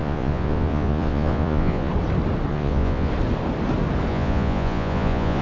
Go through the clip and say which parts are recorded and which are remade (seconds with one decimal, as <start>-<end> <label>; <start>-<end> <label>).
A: 0.0-1.9 remade; 1.9-2.5 recorded; 2.5-3.1 remade; 3.1-4.1 recorded; 4.1-5.4 remade